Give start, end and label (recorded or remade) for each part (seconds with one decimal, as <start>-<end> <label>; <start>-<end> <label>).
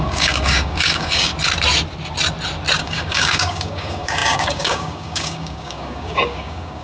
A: 0.0-1.3 remade; 1.3-2.8 recorded; 2.8-6.8 remade